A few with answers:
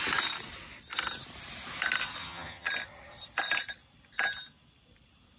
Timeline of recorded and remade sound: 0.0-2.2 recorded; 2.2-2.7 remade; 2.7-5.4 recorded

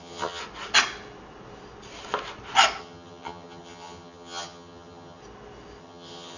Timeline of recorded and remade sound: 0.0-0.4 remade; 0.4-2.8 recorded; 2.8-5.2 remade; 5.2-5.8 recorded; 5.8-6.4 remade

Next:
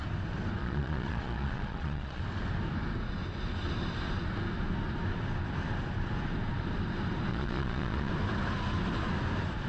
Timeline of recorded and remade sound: 0.0-0.6 recorded; 0.6-2.2 remade; 2.2-7.3 recorded; 7.3-8.1 remade; 8.1-9.7 recorded